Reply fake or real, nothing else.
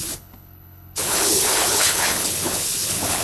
fake